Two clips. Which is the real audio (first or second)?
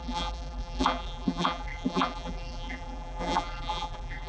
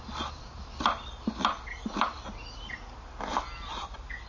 second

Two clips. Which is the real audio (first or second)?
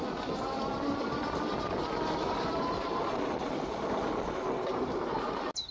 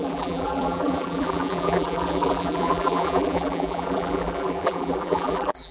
first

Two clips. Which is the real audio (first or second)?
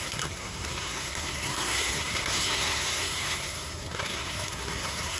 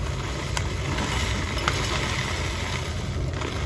second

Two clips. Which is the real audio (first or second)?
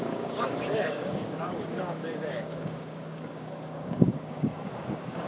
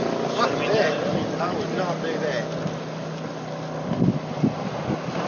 second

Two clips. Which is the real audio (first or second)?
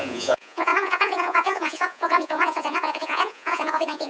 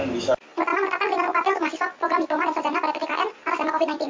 second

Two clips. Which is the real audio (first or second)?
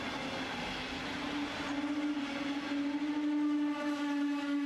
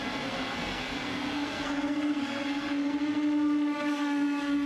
first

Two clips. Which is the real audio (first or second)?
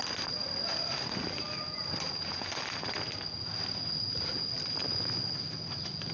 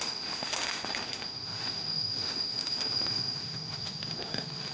first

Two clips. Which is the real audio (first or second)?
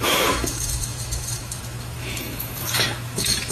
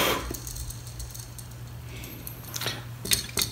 second